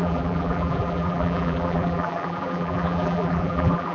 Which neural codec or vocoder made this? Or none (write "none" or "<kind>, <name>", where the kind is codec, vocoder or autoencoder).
vocoder, BigVGAN v2